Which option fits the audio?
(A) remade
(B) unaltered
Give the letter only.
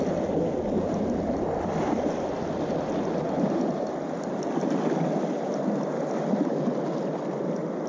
B